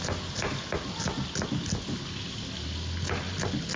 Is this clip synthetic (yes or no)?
no